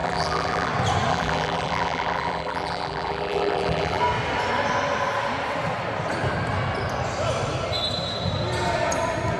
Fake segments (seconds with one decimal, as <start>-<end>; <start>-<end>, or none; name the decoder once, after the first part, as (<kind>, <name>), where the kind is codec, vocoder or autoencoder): 0.0-0.7 (vocoder, BigVGAN v2); 1.1-4.0